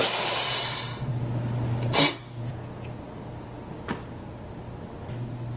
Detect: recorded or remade recorded